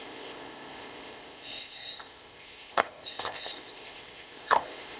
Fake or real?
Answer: fake